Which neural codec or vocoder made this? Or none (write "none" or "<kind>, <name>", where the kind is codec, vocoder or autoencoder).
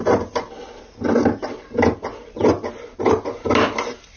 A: none